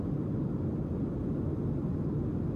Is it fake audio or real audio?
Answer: real